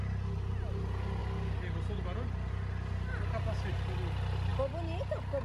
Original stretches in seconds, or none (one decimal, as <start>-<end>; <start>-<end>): 0.0-5.4